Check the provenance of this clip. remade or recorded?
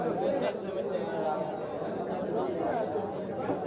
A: recorded